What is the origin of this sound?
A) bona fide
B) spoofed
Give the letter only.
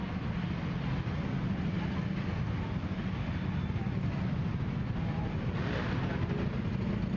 A